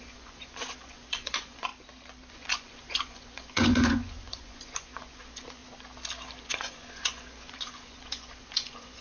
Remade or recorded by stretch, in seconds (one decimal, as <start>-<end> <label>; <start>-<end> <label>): 0.0-1.7 remade; 1.7-2.3 recorded; 2.3-5.6 remade; 5.6-6.4 recorded; 6.4-9.0 remade